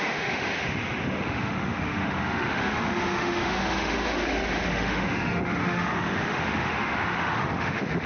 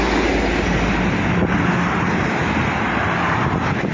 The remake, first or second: first